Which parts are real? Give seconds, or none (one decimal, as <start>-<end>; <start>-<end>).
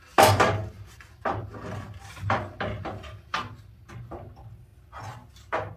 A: 0.0-5.8